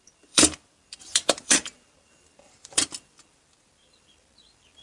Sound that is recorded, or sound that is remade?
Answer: remade